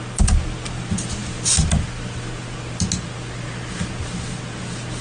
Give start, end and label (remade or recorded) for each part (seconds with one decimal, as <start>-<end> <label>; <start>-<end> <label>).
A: 0.0-5.0 recorded